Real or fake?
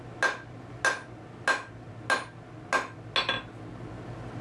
real